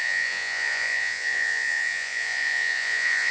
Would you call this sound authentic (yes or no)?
no